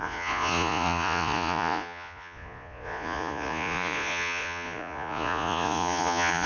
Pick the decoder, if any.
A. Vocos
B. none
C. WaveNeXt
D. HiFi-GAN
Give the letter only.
A